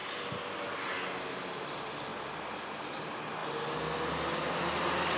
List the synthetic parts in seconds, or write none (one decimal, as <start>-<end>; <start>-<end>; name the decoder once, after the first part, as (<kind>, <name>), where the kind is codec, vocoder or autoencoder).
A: 0.0-0.5 (vocoder, BigVGAN v2)